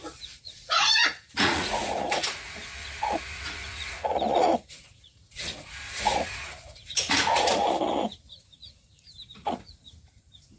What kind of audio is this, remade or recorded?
remade